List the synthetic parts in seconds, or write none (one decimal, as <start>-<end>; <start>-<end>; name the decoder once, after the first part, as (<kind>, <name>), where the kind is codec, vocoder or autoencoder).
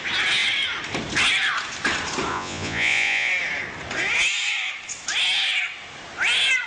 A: 2.3-3.3 (vocoder, Vocos)